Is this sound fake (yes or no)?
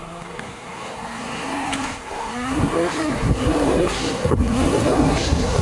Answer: yes